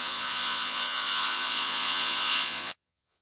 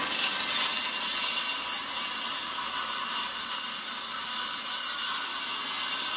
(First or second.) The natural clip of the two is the second